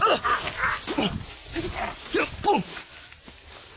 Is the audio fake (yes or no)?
no